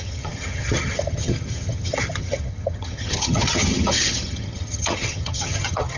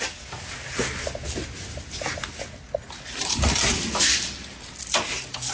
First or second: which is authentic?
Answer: second